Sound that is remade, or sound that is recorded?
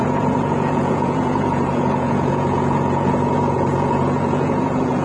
remade